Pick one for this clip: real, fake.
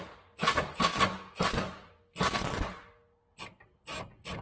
real